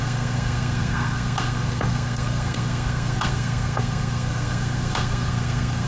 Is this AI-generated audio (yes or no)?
yes